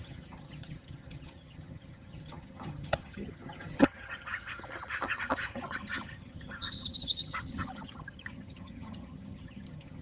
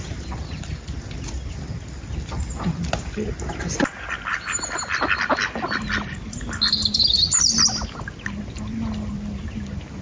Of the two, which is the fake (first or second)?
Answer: first